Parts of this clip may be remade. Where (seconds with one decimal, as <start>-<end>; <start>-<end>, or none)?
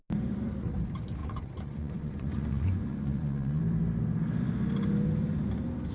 1.2-3.6